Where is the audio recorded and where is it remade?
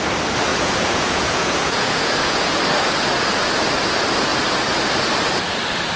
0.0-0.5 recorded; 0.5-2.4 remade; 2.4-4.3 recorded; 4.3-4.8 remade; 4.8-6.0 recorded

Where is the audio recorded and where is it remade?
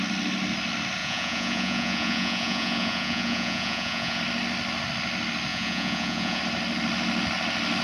0.0-1.0 recorded; 1.0-4.2 remade; 4.2-5.5 recorded; 5.5-6.4 remade; 6.4-7.8 recorded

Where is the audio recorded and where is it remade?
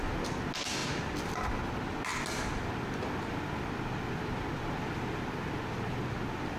0.0-6.6 recorded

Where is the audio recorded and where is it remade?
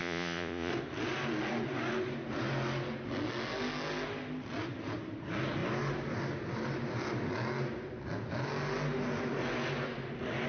0.0-0.7 remade; 0.7-10.5 recorded